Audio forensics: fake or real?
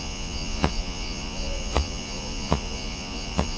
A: fake